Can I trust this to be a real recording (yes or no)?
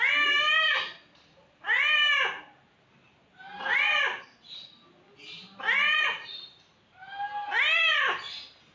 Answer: yes